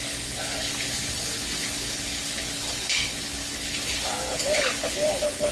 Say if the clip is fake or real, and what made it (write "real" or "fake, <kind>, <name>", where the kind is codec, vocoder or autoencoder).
fake, codec, HILCodec